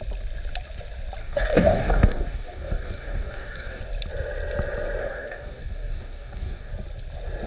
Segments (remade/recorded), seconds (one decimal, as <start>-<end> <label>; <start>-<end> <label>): 0.0-1.2 recorded; 1.2-3.8 remade; 3.8-5.0 recorded; 5.0-6.7 remade; 6.7-7.5 recorded